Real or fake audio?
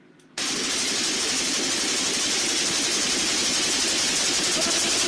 real